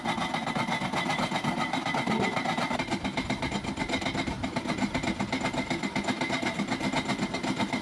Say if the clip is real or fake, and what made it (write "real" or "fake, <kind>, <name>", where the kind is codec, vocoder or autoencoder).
real